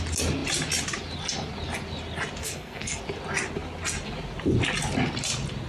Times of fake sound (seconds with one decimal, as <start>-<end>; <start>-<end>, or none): 2.4-3.0